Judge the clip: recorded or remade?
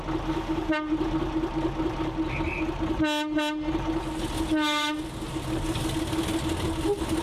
recorded